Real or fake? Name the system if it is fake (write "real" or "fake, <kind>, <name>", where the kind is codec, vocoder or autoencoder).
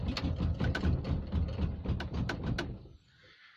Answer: real